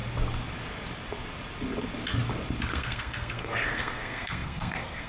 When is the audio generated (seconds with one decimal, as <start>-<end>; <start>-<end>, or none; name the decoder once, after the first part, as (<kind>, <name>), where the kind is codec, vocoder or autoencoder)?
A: 2.7-5.1 (codec, SNAC)